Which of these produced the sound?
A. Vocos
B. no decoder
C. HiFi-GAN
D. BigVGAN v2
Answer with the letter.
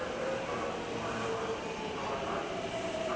B